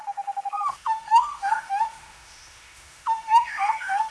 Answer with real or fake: fake